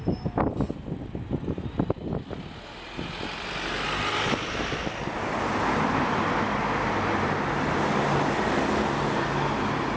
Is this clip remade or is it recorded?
recorded